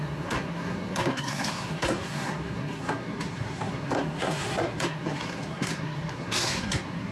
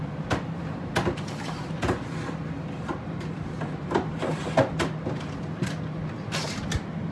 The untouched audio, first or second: second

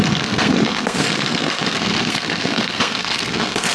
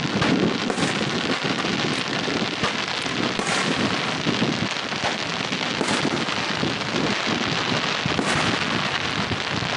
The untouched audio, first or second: second